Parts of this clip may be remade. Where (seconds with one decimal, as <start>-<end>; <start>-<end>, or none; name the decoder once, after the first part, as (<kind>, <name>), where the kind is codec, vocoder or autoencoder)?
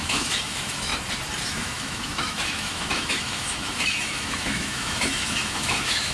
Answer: 0.0-0.9 (autoencoder, DAC-VAE); 1.4-6.1